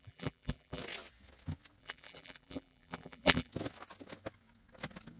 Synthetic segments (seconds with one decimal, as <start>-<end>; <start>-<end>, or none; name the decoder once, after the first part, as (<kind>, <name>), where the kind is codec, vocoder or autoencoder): 0.0-0.8 (vocoder, BigVGAN v2); 1.8-3.5